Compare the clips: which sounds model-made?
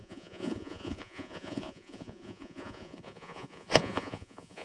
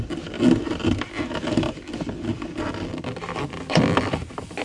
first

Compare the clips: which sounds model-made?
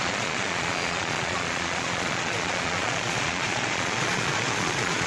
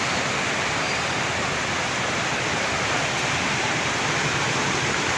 first